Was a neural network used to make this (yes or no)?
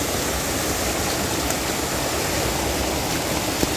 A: no